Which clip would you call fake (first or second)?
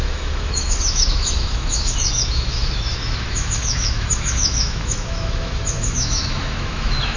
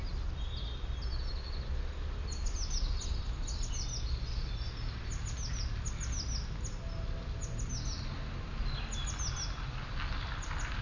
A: first